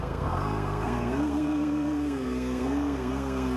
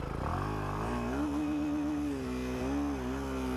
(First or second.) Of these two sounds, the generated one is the first